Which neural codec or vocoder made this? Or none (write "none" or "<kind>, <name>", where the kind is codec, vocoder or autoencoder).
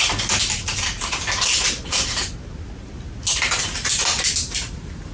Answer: none